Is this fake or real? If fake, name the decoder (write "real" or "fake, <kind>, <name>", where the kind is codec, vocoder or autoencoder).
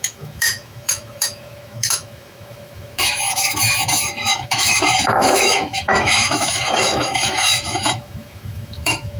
fake, autoencoder, DAC-VAE